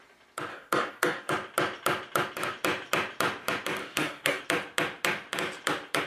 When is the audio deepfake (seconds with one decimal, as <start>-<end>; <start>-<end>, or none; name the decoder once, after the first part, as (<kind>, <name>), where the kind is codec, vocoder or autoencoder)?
0.5-1.3 (codec, DAC); 3.8-4.4